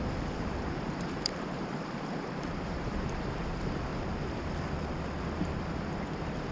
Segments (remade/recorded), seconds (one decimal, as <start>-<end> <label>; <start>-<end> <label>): 0.0-3.9 remade; 3.9-5.4 recorded; 5.4-6.5 remade